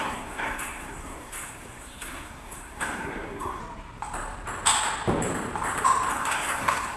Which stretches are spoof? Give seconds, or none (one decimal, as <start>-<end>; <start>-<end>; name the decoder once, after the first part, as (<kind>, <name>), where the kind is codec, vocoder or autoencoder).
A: 0.0-3.6 (codec, SNAC); 6.1-7.0